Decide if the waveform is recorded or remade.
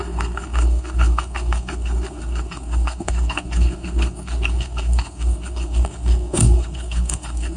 remade